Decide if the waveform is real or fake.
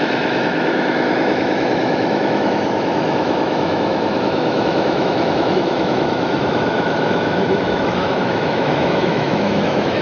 fake